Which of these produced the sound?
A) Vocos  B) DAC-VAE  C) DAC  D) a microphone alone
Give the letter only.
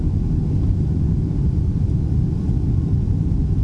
D